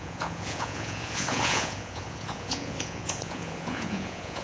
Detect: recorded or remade remade